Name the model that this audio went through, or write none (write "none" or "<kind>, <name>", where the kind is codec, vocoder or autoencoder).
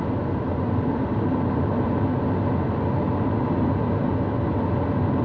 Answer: none